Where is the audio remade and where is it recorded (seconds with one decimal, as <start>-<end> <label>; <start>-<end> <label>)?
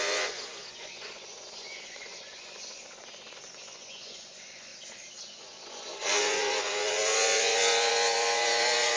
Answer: 0.0-4.7 remade; 4.7-5.2 recorded; 5.2-9.0 remade